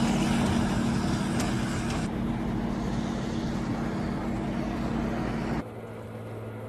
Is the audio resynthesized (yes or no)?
no